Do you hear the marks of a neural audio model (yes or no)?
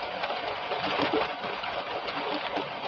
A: yes